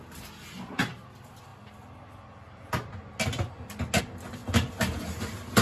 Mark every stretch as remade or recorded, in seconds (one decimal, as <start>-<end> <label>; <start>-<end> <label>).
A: 0.0-5.6 recorded